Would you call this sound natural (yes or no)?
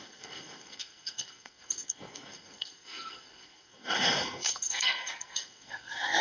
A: no